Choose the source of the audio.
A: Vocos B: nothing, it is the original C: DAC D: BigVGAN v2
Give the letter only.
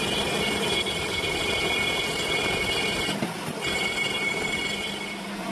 B